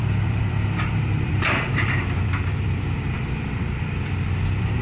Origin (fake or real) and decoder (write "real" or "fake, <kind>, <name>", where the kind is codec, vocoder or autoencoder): fake, vocoder, BigVGAN v2